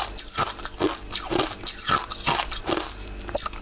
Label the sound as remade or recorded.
recorded